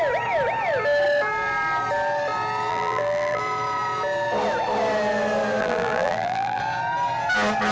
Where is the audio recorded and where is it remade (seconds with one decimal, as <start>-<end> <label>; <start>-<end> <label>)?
0.0-2.7 recorded; 2.7-3.4 remade; 3.4-5.6 recorded; 5.6-6.6 remade; 6.6-7.7 recorded